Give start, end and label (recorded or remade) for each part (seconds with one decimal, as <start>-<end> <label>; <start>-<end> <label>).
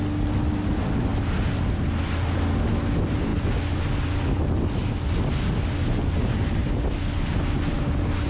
0.0-8.3 recorded